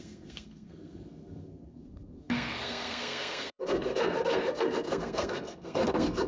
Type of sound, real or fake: fake